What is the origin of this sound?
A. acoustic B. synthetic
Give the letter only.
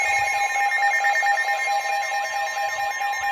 A